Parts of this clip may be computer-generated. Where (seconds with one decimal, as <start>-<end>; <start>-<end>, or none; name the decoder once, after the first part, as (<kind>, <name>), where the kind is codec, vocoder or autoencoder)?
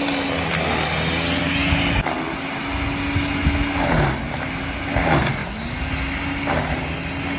none